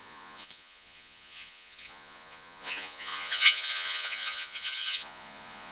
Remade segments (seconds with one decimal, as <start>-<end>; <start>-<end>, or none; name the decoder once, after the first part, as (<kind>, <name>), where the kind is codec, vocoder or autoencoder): 0.0-5.7 (vocoder, Vocos)